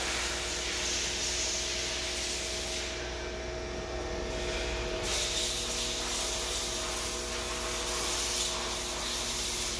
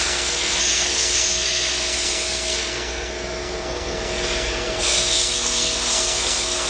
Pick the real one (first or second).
first